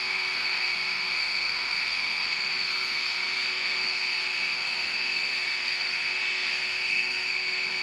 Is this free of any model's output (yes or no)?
no